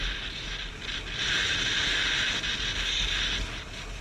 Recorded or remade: recorded